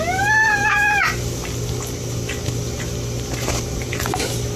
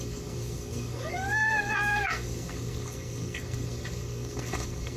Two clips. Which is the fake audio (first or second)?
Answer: second